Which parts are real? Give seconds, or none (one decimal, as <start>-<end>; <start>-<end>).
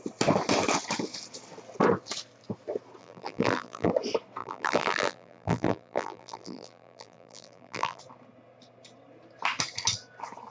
0.0-3.0; 3.9-4.4; 8.0-10.5